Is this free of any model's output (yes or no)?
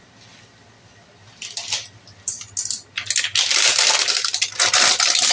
yes